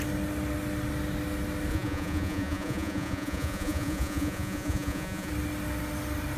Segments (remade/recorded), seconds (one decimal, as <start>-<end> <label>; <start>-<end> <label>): 0.0-1.7 recorded; 1.7-5.3 remade; 5.3-6.4 recorded